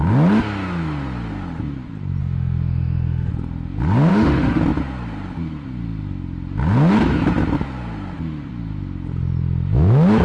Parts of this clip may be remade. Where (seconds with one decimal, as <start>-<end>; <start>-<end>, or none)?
2.2-3.3; 4.1-4.6